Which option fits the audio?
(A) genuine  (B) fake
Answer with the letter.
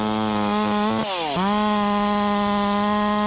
A